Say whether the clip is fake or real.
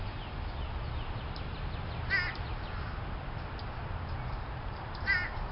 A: real